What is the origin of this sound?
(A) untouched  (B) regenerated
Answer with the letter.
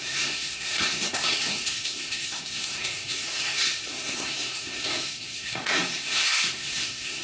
B